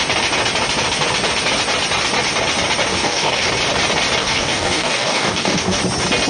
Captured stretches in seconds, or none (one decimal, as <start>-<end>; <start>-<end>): 0.0-2.9; 3.5-4.2; 5.8-6.3